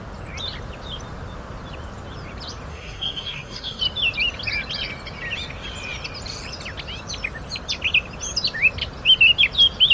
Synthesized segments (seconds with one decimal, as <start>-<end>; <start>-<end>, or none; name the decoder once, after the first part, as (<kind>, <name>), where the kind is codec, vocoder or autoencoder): 2.7-3.8 (codec, SNAC)